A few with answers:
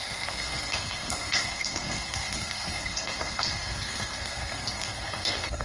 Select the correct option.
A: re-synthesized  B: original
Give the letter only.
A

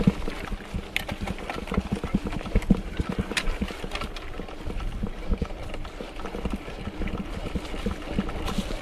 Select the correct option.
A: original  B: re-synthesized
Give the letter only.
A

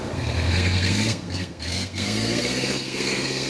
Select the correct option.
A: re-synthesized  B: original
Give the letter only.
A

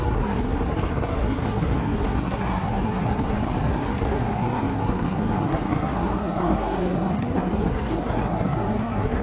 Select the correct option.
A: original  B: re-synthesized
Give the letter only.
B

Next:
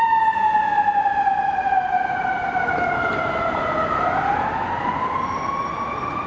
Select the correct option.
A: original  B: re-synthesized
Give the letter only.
A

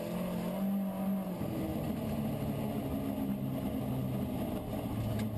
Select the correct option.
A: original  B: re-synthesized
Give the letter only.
A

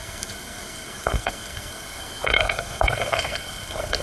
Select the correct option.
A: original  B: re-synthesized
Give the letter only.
B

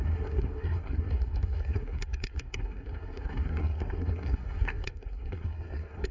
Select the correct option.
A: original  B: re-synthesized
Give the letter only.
B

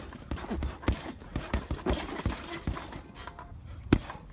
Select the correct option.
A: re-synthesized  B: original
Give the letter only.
B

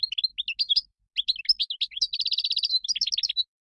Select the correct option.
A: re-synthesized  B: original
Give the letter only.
B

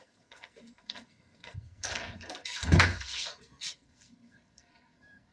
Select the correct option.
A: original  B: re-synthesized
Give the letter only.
B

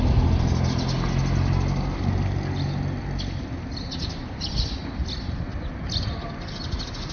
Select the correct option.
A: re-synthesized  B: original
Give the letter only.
B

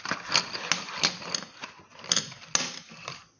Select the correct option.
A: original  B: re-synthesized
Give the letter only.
A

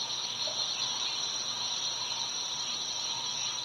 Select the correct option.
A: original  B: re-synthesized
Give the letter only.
A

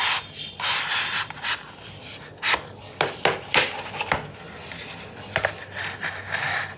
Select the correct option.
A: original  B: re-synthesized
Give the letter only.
A